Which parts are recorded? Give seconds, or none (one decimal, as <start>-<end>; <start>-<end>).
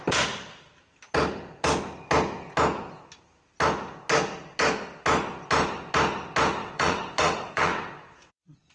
0.0-6.6